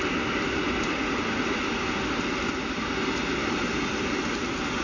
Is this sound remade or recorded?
recorded